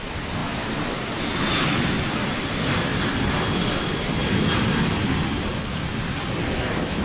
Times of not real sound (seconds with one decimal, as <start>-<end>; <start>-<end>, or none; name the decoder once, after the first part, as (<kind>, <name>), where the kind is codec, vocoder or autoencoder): 0.0-2.9 (vocoder, BigVGAN v2); 3.8-4.2; 5.7-7.0

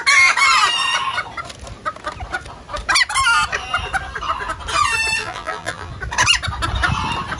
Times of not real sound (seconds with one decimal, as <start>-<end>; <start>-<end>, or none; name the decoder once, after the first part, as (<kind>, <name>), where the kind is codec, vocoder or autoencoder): 5.2-5.9 (vocoder, BigVGAN v2)

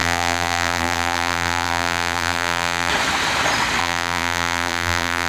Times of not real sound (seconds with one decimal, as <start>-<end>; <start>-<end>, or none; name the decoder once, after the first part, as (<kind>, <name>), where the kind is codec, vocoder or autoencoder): 0.0-2.9 (vocoder, BigVGAN v2); 3.8-5.3

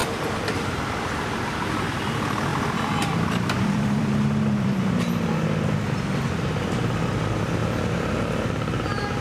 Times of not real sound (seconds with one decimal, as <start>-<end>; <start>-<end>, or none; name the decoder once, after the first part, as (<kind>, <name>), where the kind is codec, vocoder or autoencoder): 0.0-1.0 (vocoder, BigVGAN v2); 2.5-4.9

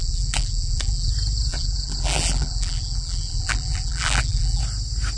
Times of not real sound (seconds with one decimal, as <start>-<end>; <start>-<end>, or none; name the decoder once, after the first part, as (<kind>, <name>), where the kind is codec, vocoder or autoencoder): 0.0-1.1 (vocoder, BigVGAN v2); 1.5-4.6

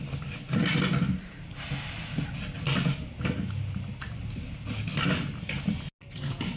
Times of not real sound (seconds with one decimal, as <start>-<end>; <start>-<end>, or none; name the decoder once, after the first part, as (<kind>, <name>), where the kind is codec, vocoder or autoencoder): 4.9-5.7 (vocoder, BigVGAN v2)

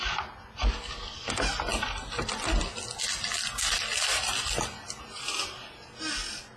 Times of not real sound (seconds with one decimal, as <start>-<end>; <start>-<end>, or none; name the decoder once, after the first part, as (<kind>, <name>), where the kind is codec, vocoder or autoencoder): none